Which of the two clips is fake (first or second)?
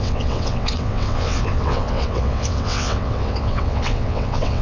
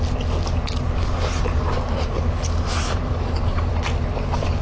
first